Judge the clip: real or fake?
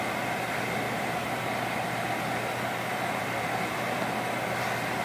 real